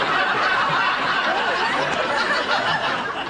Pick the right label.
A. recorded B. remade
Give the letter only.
A